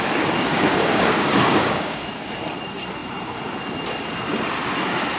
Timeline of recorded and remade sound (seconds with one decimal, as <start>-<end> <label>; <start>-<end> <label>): 0.0-0.5 recorded; 0.5-2.4 remade; 2.4-5.2 recorded